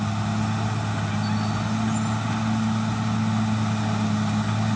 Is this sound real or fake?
real